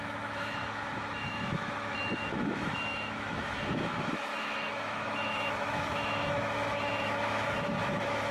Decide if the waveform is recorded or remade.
remade